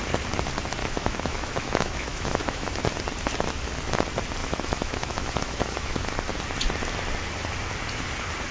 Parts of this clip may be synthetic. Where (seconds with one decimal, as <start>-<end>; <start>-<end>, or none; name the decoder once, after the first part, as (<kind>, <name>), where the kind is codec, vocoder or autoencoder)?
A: 0.8-2.8 (autoencoder, DAC-VAE); 4.4-6.1